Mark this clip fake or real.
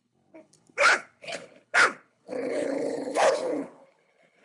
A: fake